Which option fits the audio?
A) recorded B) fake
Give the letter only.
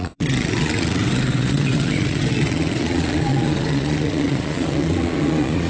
B